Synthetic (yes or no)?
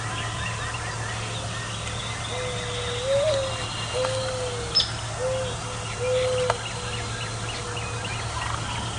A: no